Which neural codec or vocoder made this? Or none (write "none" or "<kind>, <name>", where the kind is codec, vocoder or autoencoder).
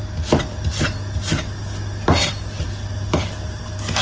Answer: none